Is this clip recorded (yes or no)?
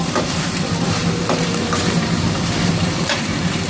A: no